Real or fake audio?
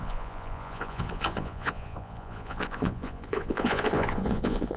fake